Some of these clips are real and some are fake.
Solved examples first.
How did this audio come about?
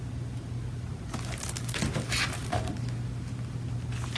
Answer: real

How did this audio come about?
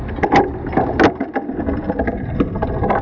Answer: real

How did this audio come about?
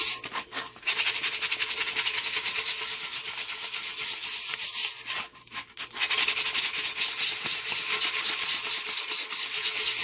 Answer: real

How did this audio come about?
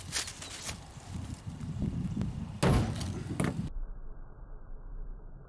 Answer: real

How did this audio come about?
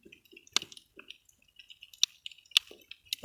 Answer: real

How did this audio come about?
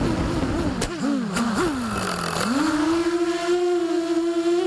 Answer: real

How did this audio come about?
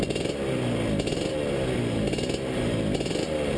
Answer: real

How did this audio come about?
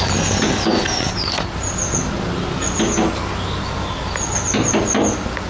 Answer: real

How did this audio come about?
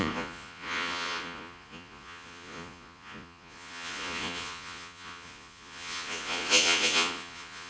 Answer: fake